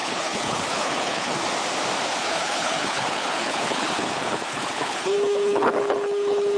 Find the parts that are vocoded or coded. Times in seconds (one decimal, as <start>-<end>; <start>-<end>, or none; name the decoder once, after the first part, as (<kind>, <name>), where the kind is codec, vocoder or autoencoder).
0.0-1.4 (codec, HILCodec); 2.2-6.6